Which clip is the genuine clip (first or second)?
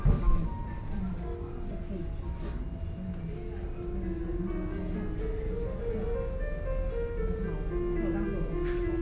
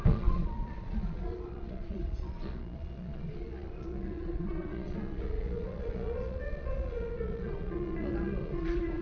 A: first